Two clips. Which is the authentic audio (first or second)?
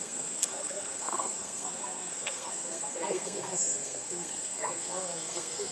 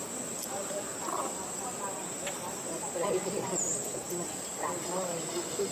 second